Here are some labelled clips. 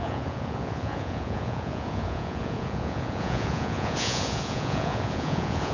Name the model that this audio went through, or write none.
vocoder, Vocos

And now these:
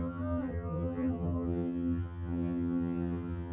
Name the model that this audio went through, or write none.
vocoder, HiFi-GAN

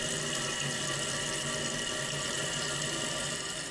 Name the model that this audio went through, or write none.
none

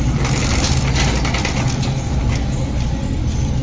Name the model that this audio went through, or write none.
none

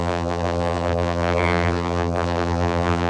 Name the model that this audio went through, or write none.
vocoder, BigVGAN v2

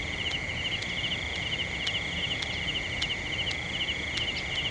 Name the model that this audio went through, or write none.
none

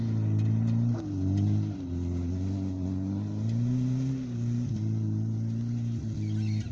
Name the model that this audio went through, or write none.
none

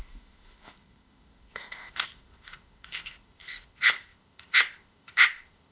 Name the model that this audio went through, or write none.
codec, ZipCodec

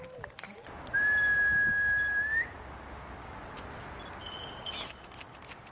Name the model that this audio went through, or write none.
none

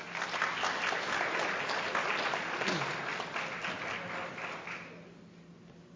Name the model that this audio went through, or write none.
none